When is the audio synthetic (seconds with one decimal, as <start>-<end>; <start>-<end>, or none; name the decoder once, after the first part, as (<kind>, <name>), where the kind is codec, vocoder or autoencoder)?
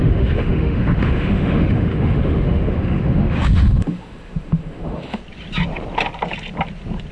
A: 0.0-5.2 (autoencoder, DAC-VAE)